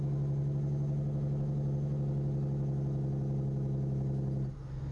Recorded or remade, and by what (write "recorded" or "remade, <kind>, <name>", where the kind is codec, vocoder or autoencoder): recorded